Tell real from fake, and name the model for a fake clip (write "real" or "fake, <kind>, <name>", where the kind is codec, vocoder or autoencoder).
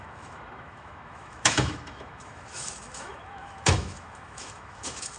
fake, autoencoder, DAC-VAE